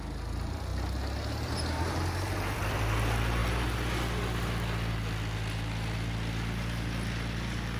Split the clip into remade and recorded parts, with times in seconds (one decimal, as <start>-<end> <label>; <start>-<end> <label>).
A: 0.0-0.7 remade; 0.7-1.3 recorded; 1.3-3.4 remade; 3.4-4.9 recorded; 4.9-7.8 remade